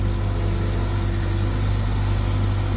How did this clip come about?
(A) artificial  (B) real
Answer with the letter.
B